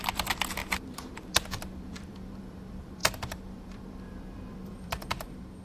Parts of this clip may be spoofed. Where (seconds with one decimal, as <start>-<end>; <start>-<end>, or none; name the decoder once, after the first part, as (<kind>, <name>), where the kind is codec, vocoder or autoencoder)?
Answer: 0.0-5.6 (vocoder, BigVGAN v2)